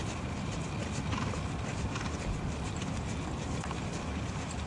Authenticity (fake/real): real